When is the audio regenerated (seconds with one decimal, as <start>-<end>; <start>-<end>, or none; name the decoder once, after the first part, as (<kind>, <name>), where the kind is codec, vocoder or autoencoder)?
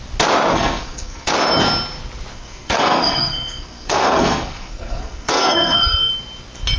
0.5-1.3 (codec, SNAC); 2.3-6.1